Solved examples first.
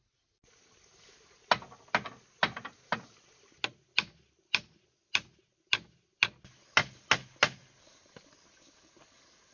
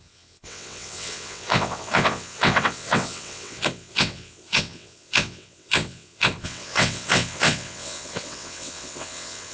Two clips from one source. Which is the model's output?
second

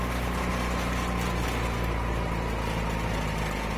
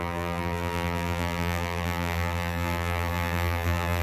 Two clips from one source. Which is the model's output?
second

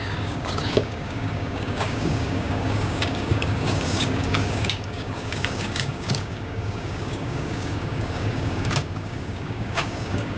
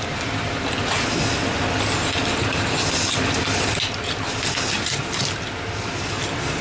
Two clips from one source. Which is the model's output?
first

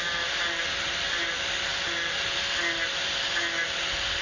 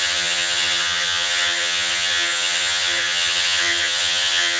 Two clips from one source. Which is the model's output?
second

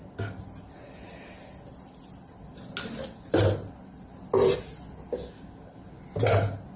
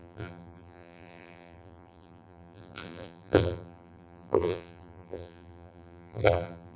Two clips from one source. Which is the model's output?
second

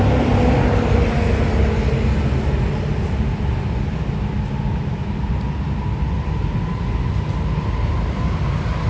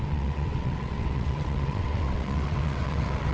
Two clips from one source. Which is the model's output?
second